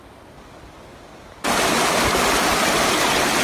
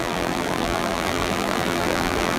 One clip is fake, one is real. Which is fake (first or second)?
second